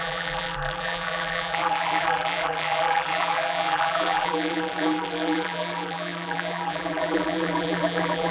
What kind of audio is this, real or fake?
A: fake